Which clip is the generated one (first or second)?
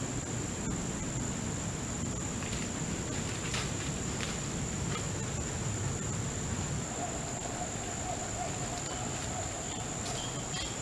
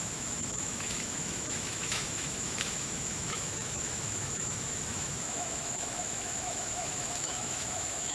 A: second